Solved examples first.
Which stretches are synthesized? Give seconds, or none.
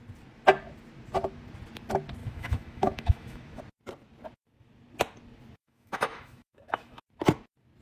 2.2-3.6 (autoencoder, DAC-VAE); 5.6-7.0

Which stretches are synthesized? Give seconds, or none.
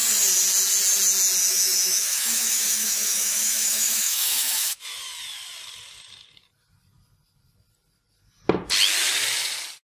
1.4-4.8 (autoencoder, DAC-VAE)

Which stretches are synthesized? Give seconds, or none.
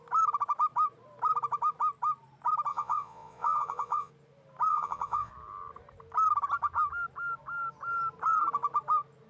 2.7-4.1 (vocoder, Vocos); 4.7-5.3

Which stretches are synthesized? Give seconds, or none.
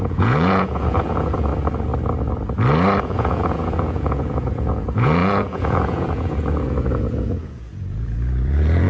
0.0-1.5 (vocoder, Vocos); 3.0-8.9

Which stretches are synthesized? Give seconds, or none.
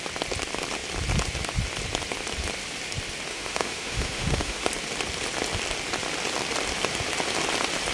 3.3-4.7 (autoencoder, DAC-VAE)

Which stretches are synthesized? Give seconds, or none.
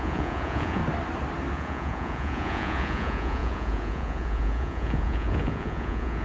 0.0-0.8 (vocoder, Vocos); 1.5-6.2